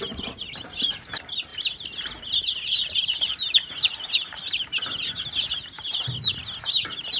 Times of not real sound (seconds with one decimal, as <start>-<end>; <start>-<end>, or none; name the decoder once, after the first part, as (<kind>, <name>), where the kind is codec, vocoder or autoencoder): 1.5-4.1 (vocoder, BigVGAN v2)